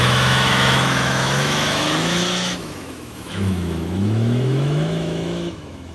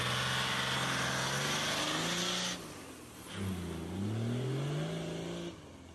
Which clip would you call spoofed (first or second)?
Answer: first